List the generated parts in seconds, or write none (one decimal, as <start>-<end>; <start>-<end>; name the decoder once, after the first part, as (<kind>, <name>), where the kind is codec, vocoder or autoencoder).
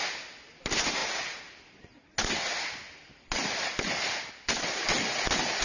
none